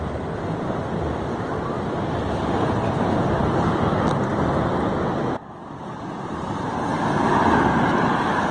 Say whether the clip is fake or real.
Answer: real